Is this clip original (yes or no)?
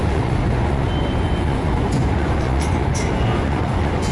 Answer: no